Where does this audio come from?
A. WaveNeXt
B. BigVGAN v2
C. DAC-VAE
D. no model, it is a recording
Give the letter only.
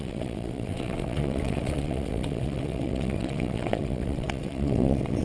A